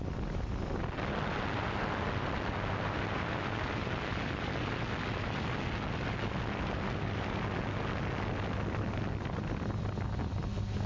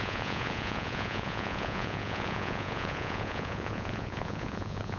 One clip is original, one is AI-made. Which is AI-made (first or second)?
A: second